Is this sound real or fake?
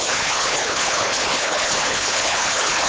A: fake